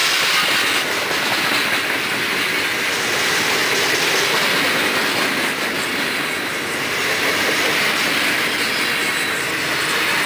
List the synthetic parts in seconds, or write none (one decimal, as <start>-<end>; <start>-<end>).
1.8-3.6; 4.3-10.3